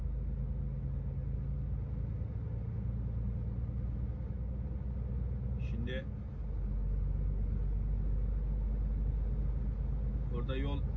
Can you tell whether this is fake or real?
real